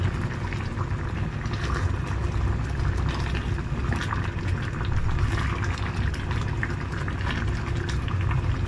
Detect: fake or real real